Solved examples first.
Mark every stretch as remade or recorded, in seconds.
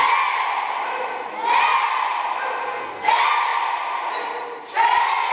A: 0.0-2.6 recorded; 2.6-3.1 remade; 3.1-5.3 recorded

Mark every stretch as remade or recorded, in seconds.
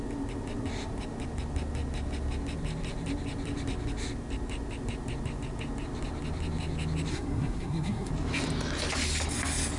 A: 0.0-7.1 recorded; 7.1-8.1 remade; 8.1-9.8 recorded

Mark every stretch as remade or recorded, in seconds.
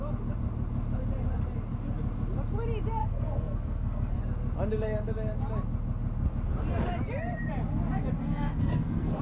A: 0.0-3.0 recorded; 3.0-4.2 remade; 4.2-8.2 recorded; 8.2-9.2 remade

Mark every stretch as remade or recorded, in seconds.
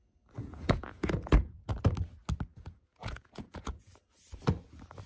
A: 0.0-0.4 recorded; 0.4-1.7 remade; 1.7-2.5 recorded; 2.5-3.9 remade; 3.9-5.1 recorded